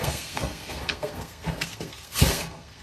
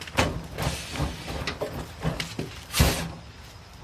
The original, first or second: second